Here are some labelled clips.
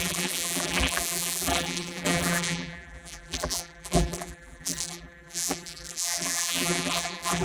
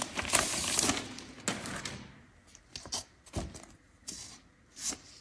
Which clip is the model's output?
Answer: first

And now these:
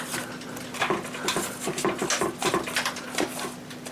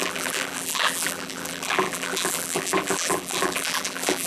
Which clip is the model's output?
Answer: second